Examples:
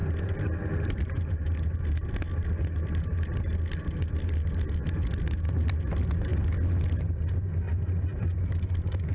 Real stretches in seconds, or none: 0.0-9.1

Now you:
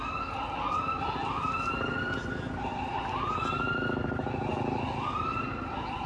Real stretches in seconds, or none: 0.0-6.1

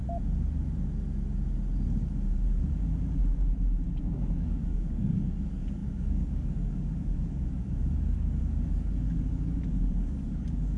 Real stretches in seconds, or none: 0.0-4.0

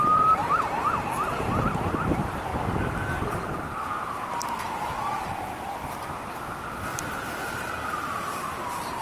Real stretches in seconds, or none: 6.9-7.5

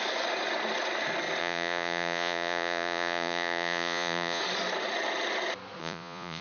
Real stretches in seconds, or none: 0.0-1.4; 4.4-5.8

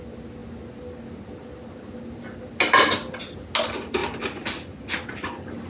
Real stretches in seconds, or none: 0.0-5.7